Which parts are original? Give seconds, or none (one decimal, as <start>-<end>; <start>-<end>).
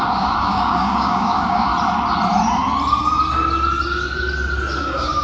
1.7-4.8